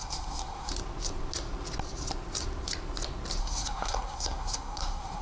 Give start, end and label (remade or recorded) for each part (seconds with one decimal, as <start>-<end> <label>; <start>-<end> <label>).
0.0-0.7 remade; 0.7-3.4 recorded; 3.4-5.2 remade